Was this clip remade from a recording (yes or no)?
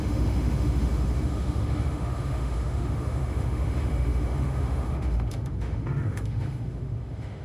yes